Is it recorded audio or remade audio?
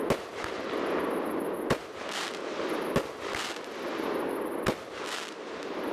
recorded